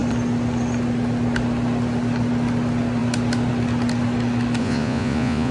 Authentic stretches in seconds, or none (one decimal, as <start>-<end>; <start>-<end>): 0.0-4.6